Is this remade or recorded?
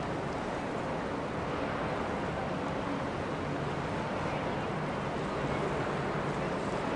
recorded